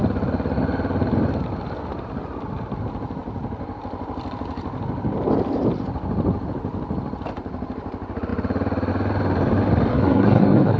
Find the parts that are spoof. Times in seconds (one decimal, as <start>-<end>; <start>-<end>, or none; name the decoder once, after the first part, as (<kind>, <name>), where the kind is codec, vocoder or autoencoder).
9.9-10.8 (codec, SNAC)